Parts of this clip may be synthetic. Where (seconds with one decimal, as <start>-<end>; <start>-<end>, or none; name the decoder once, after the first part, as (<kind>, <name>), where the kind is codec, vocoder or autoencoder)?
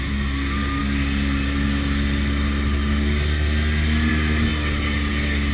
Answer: none